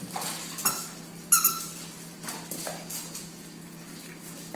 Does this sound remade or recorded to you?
recorded